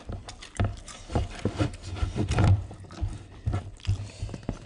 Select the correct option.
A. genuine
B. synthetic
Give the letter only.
A